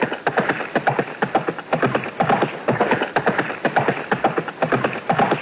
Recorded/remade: recorded